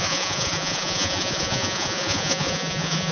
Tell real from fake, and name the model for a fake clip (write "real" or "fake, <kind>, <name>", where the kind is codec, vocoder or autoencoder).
fake, vocoder, Vocos